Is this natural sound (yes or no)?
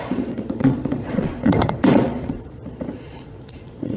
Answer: no